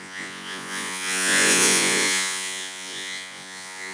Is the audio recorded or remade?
remade